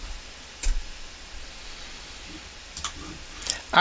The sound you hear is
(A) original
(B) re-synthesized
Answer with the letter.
A